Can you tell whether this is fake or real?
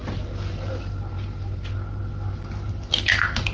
real